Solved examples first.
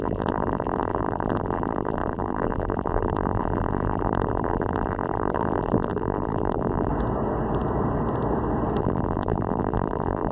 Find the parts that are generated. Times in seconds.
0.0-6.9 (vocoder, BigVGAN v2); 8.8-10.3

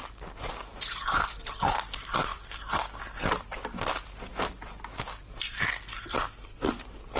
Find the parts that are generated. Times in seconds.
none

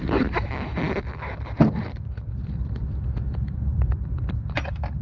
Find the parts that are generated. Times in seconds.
0.0-0.7 (vocoder, BigVGAN v2); 1.8-3.0; 3.5-5.0